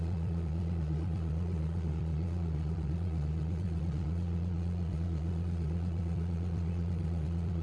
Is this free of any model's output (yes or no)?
no